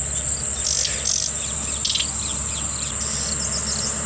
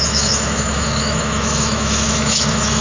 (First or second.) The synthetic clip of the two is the second